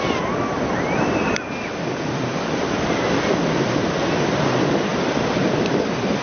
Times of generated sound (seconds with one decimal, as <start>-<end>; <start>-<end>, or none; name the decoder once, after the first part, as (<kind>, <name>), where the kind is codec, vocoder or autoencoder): none